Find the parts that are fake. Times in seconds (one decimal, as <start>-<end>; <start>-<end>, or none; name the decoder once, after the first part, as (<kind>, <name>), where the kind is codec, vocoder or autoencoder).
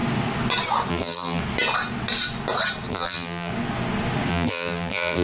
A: 0.9-1.4 (vocoder, BigVGAN v2); 2.9-3.5; 4.3-5.2